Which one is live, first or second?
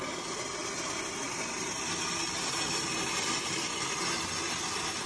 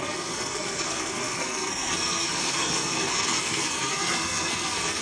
first